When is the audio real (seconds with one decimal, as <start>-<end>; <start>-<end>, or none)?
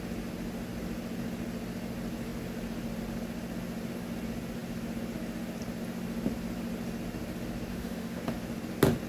0.0-7.7; 8.2-9.1